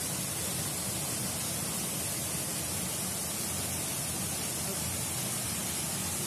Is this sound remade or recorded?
recorded